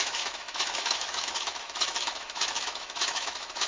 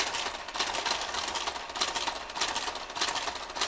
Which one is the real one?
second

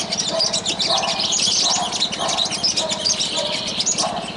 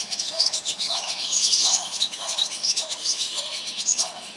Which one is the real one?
first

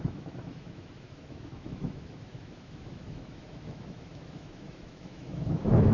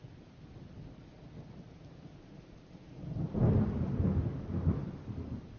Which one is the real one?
second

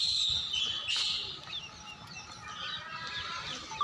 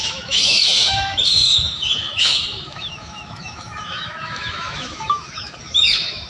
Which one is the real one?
first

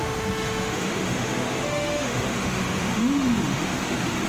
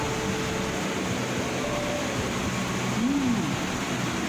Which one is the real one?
second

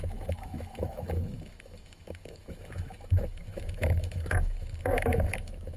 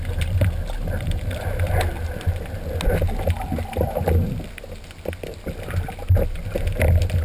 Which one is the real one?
second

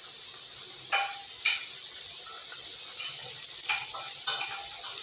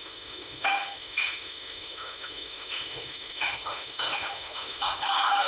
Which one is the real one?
first